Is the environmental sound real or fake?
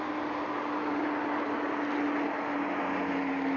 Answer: real